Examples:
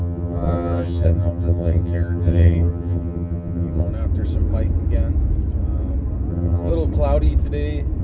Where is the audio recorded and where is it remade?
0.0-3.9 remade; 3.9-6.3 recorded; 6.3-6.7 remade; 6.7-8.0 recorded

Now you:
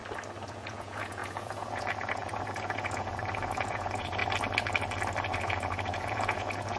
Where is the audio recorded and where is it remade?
0.0-0.5 recorded; 0.5-4.2 remade; 4.2-5.4 recorded; 5.4-6.8 remade

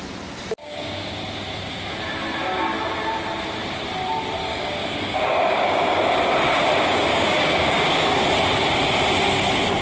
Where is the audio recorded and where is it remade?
0.0-0.6 recorded; 0.6-1.1 remade; 1.1-4.4 recorded; 4.4-6.1 remade; 6.1-7.1 recorded; 7.1-8.2 remade; 8.2-9.8 recorded

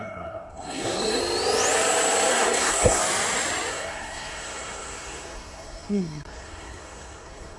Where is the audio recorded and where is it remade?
0.0-1.2 remade; 1.2-2.3 recorded; 2.3-3.0 remade; 3.0-3.7 recorded; 3.7-7.6 remade